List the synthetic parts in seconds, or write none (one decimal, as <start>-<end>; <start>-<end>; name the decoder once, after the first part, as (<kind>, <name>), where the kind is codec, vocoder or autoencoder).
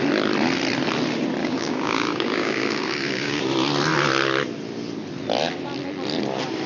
1.4-3.4 (codec, DAC)